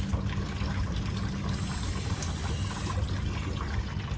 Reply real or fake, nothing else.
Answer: real